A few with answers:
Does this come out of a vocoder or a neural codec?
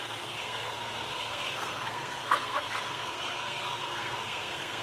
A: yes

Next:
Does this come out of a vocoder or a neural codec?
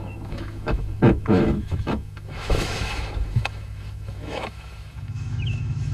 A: yes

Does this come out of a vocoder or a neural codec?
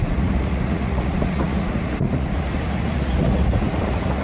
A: yes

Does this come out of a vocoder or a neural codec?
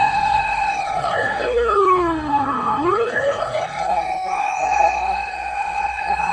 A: yes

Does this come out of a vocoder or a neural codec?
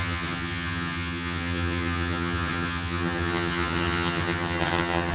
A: yes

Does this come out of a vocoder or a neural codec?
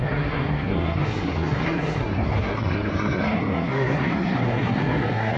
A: yes